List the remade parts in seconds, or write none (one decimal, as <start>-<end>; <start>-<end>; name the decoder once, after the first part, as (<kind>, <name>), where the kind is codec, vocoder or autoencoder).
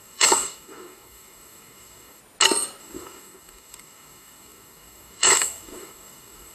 0.0-2.2 (codec, DAC); 2.8-6.5